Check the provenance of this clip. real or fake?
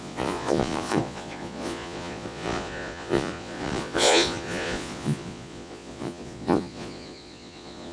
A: fake